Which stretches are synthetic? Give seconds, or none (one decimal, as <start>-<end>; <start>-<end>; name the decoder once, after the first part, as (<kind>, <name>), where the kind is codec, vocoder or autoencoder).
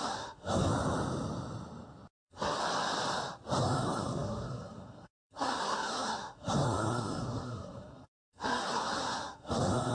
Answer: 0.0-0.7 (codec, SNAC); 2.2-2.6; 3.6-9.9